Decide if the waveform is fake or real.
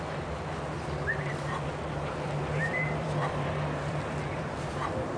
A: fake